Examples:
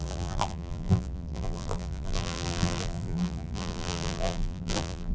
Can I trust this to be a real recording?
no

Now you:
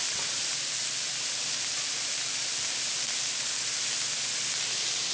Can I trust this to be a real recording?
yes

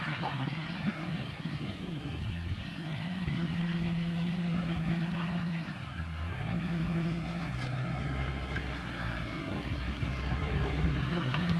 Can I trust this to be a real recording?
no